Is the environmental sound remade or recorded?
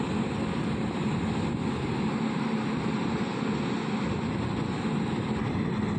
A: recorded